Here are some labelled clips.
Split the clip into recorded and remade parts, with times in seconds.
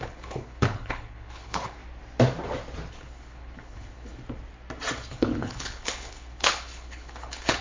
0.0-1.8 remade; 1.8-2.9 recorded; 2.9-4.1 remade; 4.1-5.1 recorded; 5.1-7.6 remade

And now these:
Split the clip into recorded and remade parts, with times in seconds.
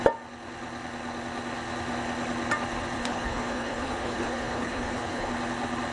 0.0-3.0 recorded; 3.0-5.3 remade; 5.3-5.9 recorded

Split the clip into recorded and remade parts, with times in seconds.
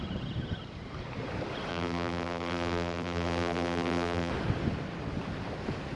0.0-1.7 recorded; 1.7-4.3 remade; 4.3-6.0 recorded